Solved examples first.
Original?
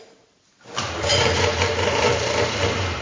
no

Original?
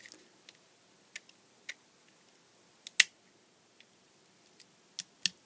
yes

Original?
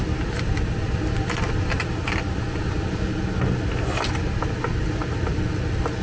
yes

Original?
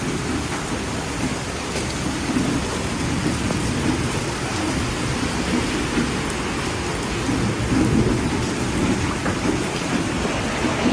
yes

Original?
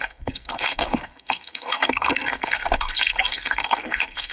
no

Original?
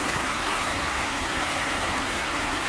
no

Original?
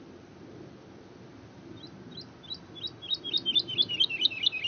no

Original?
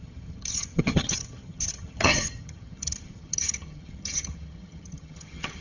no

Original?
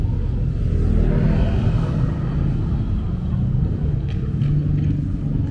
yes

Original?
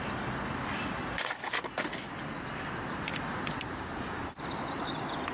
yes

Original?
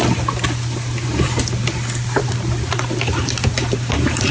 yes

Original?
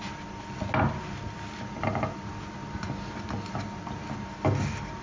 yes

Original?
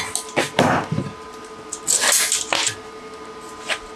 yes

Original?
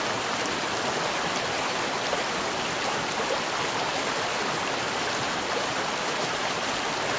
yes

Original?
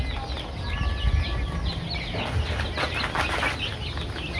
yes